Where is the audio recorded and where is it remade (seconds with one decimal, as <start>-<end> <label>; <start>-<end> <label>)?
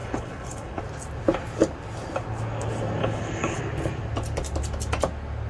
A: 0.0-0.8 remade; 0.8-3.0 recorded; 3.0-3.6 remade; 3.6-5.5 recorded